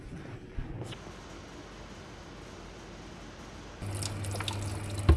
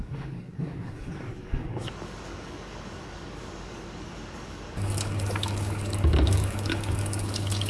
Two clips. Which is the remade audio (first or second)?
second